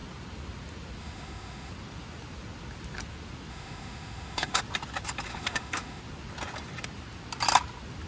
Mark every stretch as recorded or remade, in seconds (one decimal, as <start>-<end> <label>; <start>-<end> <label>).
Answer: 0.0-1.0 recorded; 1.0-1.7 remade; 1.7-3.5 recorded; 3.5-4.6 remade; 4.6-5.3 recorded; 5.3-6.0 remade; 6.0-8.1 recorded